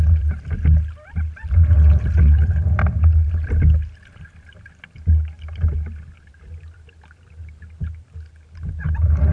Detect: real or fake real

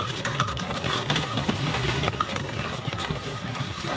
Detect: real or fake fake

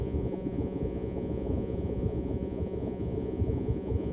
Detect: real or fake fake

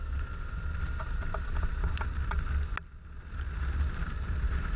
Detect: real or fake real